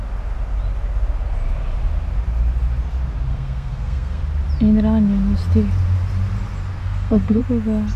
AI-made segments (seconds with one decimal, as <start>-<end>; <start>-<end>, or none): 3.3-4.2; 6.8-7.4